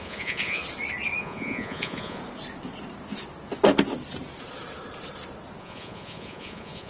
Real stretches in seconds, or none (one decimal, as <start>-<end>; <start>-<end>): 0.6-1.2; 2.2-5.6